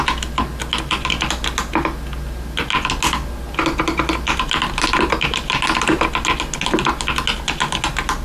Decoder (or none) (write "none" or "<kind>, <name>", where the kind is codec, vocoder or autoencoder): none